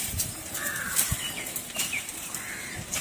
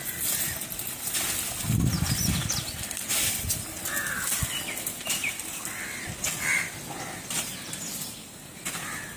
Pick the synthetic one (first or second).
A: first